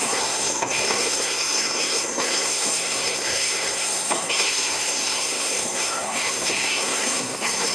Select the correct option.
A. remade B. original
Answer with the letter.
A